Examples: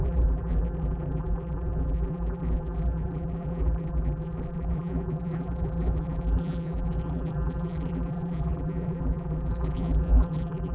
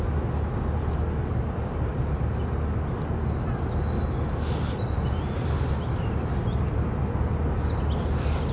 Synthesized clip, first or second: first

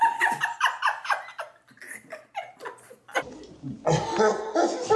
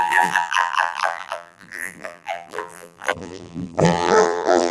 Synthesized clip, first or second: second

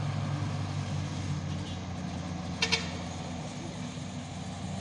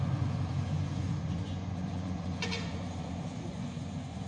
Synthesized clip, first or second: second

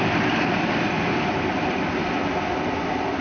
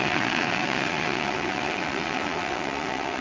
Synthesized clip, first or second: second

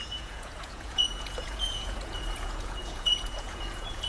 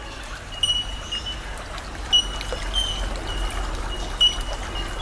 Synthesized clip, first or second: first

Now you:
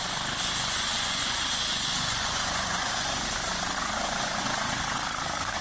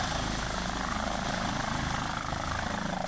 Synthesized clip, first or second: first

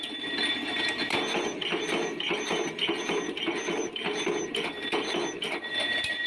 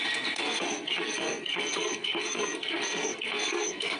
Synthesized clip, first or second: second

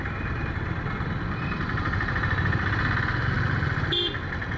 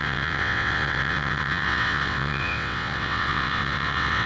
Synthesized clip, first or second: second